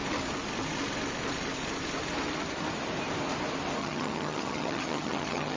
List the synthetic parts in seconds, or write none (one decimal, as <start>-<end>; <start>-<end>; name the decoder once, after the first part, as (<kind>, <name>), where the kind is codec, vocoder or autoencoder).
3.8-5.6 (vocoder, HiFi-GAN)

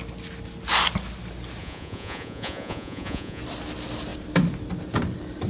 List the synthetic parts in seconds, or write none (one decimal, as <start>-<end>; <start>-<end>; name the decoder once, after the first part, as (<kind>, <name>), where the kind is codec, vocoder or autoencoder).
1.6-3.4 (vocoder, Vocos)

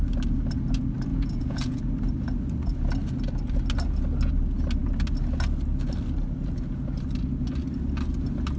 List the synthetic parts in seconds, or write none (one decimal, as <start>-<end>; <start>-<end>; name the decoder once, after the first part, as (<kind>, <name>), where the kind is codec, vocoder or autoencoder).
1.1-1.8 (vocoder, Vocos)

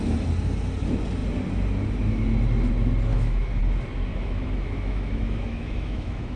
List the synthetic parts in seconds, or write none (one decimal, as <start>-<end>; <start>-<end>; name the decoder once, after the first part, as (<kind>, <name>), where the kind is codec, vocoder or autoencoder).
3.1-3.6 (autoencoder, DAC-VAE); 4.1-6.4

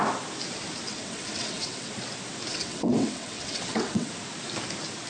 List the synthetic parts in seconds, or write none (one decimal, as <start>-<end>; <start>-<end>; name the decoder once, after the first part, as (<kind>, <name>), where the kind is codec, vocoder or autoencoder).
0.9-1.9 (vocoder, WaveNeXt); 2.5-4.1